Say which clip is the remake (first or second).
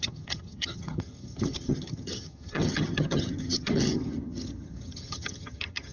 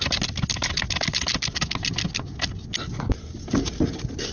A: first